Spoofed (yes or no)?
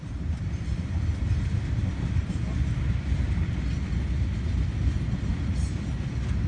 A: no